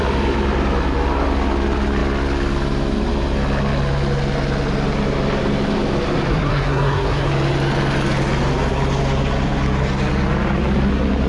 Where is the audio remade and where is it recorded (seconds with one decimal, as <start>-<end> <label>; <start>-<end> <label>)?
0.0-6.3 recorded; 6.3-7.3 remade; 7.3-11.3 recorded